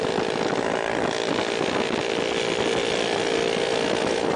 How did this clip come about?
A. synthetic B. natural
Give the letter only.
B